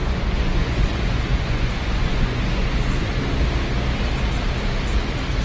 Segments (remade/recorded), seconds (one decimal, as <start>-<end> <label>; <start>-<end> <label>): 0.0-3.2 remade; 3.2-5.4 recorded